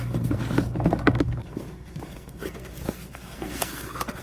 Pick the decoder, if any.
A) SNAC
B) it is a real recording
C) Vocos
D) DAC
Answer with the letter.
A